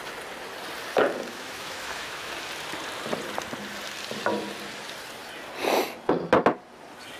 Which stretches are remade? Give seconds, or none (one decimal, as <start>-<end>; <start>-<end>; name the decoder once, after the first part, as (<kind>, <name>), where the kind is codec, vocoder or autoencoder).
1.3-2.3 (autoencoder, DAC-VAE)